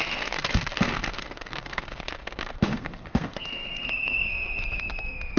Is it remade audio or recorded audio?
remade